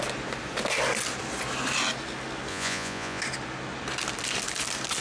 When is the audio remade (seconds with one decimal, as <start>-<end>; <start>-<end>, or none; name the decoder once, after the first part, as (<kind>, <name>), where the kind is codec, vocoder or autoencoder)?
2.5-3.2 (vocoder, Vocos)